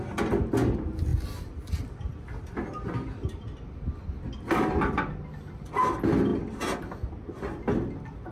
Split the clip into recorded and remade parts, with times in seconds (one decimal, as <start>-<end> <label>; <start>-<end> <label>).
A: 0.0-8.3 recorded